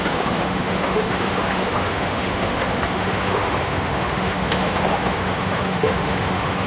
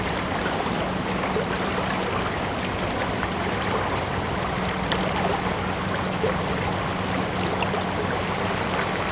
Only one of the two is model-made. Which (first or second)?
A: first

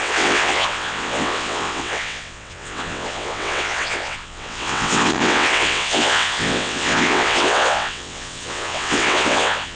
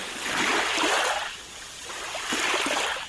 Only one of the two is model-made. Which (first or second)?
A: first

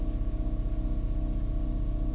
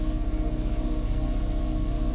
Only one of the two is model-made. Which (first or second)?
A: second